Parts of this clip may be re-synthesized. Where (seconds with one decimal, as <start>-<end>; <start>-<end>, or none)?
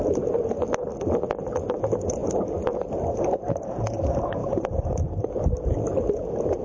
4.4-5.3